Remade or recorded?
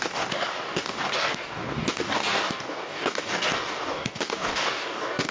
remade